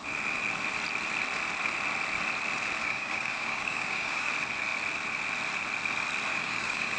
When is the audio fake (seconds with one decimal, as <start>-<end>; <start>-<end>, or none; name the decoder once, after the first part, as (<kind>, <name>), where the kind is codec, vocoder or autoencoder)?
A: 2.8-4.3 (codec, DAC); 6.3-7.0